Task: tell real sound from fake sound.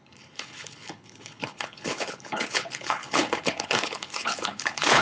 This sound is fake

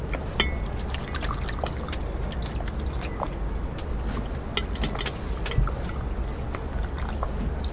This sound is real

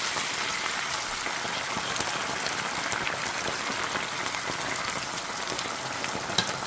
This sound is real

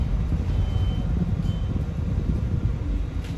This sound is real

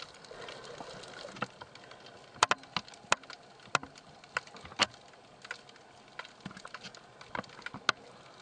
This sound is real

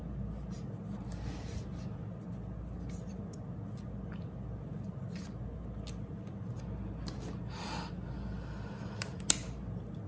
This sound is real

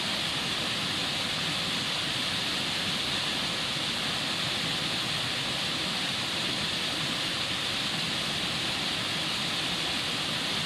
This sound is real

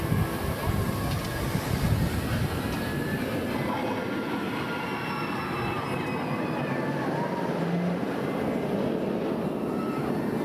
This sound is real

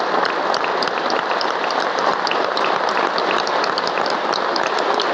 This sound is real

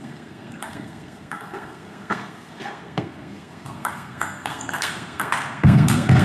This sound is fake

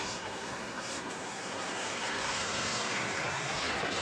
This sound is fake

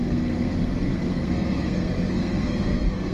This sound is fake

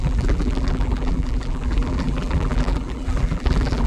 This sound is fake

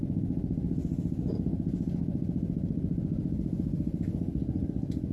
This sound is real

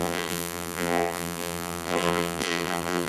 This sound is fake